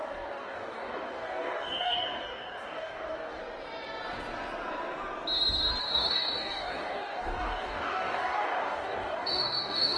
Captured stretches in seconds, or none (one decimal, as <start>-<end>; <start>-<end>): 3.4-5.8